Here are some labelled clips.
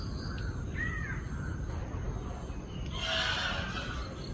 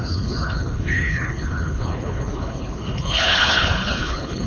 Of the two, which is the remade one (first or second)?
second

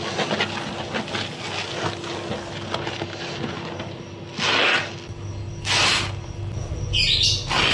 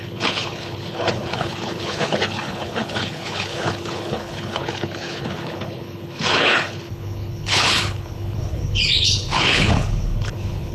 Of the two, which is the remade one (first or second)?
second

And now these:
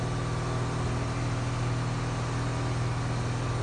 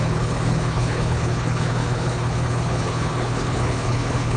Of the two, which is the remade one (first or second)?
second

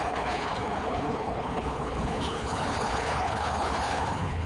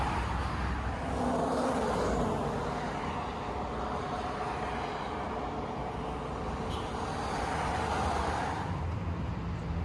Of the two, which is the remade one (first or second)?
first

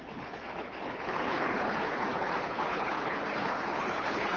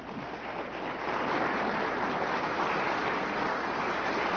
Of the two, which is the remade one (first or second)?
first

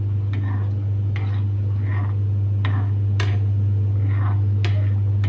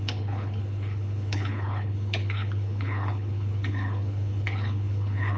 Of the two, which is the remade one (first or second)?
second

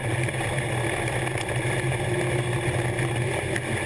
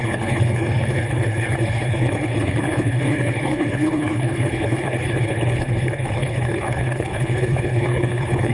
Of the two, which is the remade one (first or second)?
second